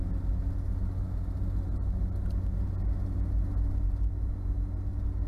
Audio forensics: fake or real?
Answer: real